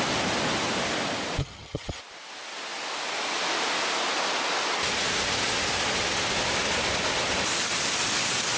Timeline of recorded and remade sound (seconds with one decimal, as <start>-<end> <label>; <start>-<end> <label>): 0.0-1.4 recorded; 1.4-2.0 remade; 2.0-8.6 recorded